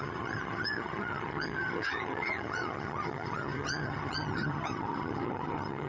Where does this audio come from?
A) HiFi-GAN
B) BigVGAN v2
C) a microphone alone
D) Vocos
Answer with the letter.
A